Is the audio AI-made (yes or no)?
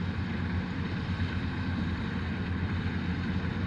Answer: no